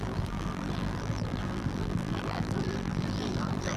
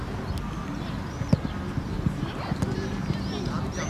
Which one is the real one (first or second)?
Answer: second